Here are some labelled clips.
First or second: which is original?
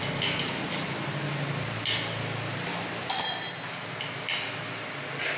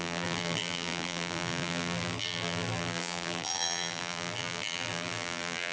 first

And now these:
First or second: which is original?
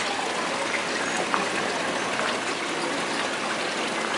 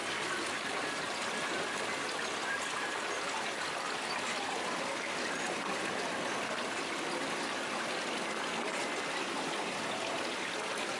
first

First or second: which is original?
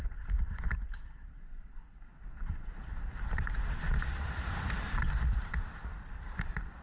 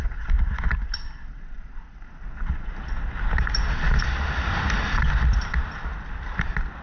second